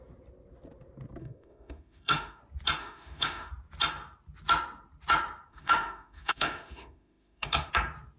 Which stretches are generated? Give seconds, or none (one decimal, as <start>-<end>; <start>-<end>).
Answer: 1.2-2.4; 2.8-3.5; 5.5-7.7